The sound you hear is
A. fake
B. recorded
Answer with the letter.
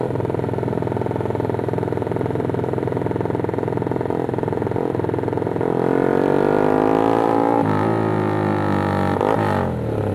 B